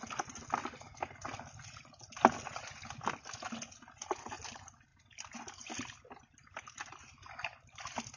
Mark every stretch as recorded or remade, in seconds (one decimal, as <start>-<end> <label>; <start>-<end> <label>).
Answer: 0.0-8.2 recorded